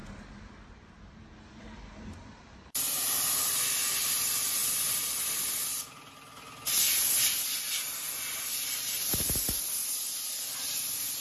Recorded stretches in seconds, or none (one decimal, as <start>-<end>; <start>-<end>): 3.4-11.2